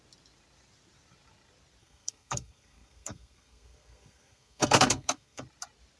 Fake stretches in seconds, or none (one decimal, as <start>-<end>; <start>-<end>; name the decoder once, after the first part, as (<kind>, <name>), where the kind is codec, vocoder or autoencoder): 1.8-5.4 (codec, SNAC)